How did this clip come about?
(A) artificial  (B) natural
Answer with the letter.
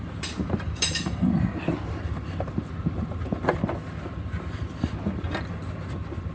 B